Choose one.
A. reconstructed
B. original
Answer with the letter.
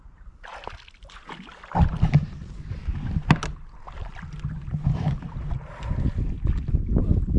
B